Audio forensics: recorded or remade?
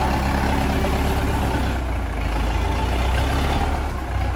recorded